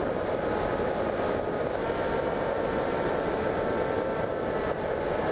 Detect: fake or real real